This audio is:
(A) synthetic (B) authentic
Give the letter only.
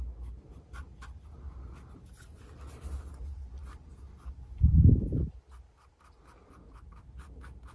B